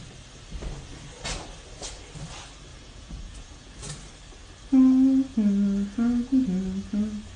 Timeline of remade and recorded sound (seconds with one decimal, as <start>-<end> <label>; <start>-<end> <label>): 0.0-2.7 recorded; 2.7-3.7 remade; 3.7-7.4 recorded